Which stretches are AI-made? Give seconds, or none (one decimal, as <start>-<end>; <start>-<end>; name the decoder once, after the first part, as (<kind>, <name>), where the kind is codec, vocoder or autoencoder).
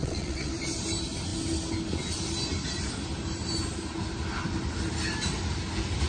0.0-0.5 (vocoder, WaveNeXt)